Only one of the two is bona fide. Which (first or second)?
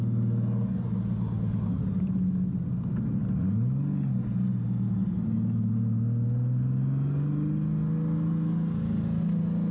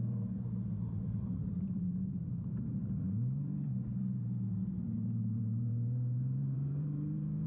first